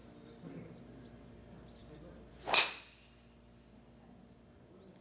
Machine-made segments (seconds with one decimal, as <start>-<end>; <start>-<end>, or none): none